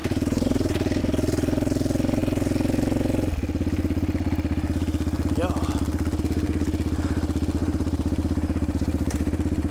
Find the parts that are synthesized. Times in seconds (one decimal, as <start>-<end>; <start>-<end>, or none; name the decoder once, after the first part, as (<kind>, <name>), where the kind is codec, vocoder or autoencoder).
0.0-1.0 (vocoder, BigVGAN v2); 7.6-9.7

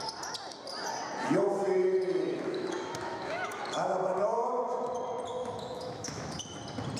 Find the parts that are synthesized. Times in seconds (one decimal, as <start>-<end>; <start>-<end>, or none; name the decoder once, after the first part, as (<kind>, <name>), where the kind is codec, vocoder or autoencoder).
1.8-3.6 (autoencoder, DAC-VAE); 5.3-6.6

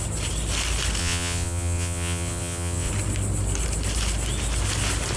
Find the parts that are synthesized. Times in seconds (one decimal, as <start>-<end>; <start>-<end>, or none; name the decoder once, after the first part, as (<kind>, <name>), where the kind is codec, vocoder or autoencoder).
1.0-2.9 (vocoder, WaveNeXt)